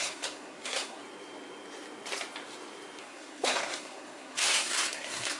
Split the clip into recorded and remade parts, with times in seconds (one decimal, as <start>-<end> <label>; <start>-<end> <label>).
0.0-1.0 remade; 1.0-3.0 recorded; 3.0-5.4 remade